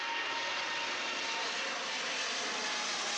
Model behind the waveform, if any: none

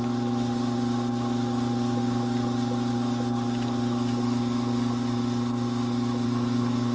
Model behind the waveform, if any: none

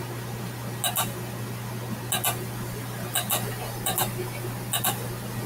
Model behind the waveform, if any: none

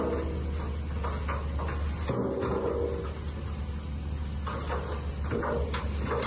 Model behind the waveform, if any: none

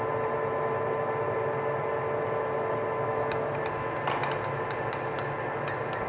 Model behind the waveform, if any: none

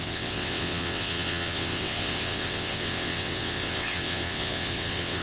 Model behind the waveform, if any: vocoder, WaveNeXt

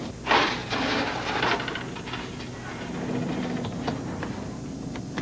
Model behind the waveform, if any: none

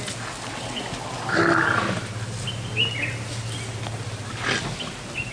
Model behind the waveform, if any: none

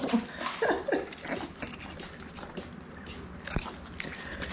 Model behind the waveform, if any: none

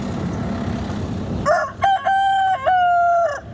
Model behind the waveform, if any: none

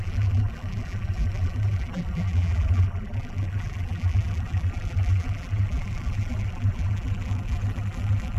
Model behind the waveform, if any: vocoder, BigVGAN v2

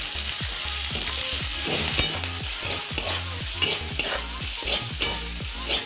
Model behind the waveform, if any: none